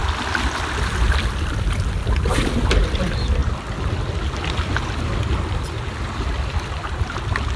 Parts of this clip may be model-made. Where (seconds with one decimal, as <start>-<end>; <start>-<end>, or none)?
none